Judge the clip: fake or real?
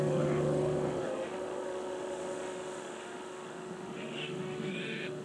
fake